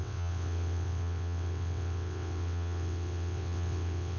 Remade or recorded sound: remade